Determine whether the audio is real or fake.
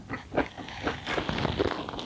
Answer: real